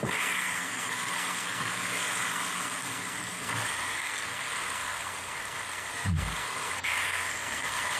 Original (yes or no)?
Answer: no